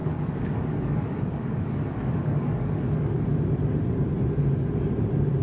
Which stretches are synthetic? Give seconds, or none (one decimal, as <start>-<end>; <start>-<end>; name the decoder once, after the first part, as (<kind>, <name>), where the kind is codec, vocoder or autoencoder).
0.0-3.2 (codec, DAC)